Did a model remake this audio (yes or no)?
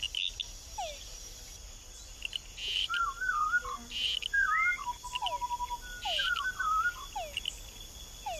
no